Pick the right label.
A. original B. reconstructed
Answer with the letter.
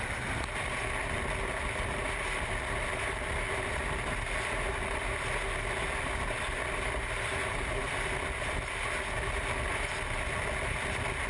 A